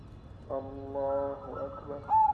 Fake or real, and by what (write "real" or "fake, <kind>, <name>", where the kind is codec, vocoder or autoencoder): real